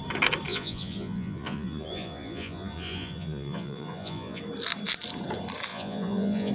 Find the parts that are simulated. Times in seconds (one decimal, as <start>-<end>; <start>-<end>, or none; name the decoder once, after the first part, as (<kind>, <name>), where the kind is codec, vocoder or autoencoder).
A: 0.5-4.4 (vocoder, Vocos); 5.7-6.5